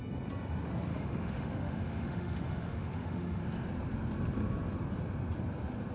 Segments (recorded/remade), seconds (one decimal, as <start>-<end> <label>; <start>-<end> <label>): 0.0-0.9 recorded; 0.9-3.4 remade; 3.4-5.9 recorded